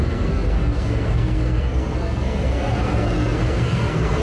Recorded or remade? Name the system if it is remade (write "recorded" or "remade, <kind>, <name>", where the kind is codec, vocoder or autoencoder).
remade, codec, SNAC